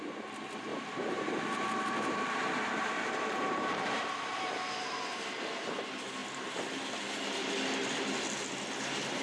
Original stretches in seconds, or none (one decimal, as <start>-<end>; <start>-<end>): 0.0-0.7; 4.5-9.2